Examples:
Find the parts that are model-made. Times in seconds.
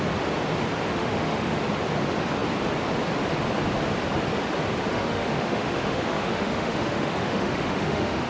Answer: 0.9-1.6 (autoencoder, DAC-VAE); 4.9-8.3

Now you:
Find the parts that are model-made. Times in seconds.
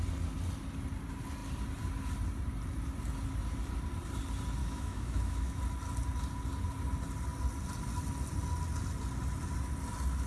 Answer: 4.6-5.6 (autoencoder, DAC-VAE)